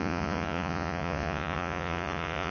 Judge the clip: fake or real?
fake